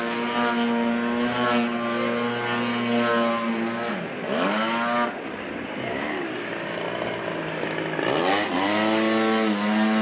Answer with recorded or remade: recorded